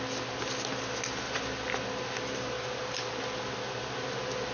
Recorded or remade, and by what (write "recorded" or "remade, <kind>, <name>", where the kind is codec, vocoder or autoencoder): recorded